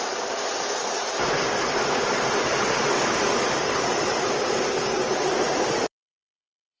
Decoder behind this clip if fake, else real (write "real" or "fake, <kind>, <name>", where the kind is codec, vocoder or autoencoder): real